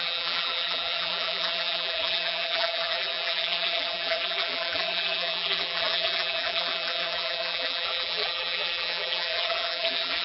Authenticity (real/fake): fake